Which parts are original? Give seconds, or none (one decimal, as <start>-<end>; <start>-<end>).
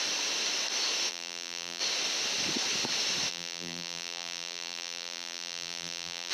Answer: 0.0-1.1; 1.8-3.3